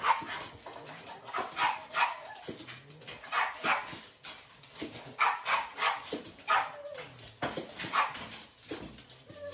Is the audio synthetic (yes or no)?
no